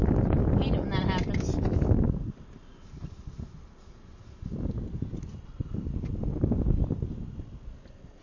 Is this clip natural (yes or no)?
yes